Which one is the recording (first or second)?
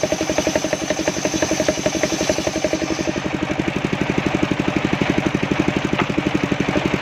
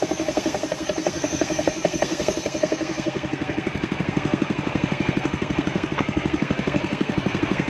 first